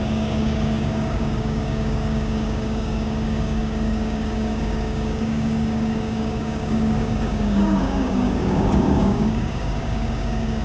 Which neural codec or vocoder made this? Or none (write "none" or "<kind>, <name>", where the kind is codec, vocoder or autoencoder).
codec, DAC